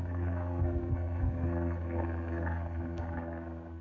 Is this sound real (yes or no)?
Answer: no